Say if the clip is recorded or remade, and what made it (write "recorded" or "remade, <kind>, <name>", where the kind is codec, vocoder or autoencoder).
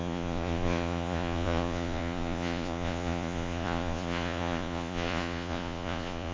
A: remade, vocoder, Vocos